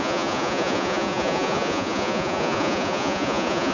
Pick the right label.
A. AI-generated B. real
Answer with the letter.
A